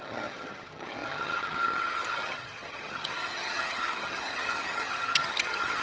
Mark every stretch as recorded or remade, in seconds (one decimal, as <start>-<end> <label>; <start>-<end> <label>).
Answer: 0.0-5.8 remade